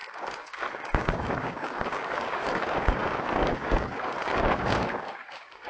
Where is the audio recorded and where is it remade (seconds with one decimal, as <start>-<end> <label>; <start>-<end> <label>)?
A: 0.0-5.7 remade